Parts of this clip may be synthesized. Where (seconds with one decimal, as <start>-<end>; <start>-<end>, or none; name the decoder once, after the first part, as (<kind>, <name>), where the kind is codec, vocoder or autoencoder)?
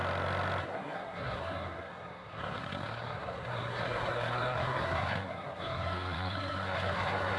0.6-7.4 (codec, SNAC)